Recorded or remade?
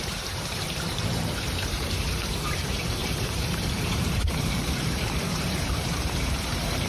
remade